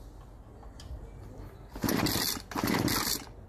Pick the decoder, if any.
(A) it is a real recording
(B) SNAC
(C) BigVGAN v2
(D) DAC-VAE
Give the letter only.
A